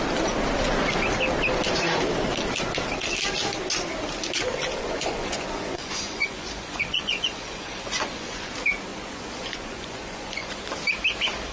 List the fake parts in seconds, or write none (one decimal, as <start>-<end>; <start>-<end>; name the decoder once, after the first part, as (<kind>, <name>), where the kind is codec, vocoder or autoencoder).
4.8-8.5 (vocoder, Vocos); 8.9-10.6